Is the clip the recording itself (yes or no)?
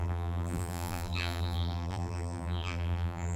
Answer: no